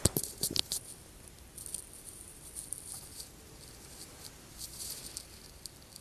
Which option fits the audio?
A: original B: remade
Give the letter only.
B